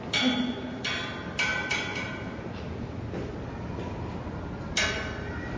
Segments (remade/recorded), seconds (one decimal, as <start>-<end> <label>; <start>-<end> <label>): 0.0-5.6 recorded